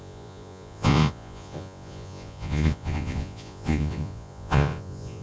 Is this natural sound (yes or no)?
no